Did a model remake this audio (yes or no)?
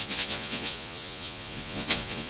yes